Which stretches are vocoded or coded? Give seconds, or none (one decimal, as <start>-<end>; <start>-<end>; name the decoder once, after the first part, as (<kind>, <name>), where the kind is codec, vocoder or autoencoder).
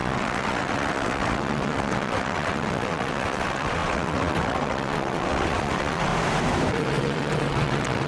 0.0-6.1 (vocoder, WaveNeXt); 6.7-8.1